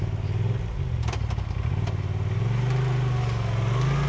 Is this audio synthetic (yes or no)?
no